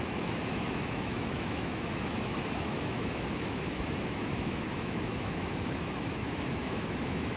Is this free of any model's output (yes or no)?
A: no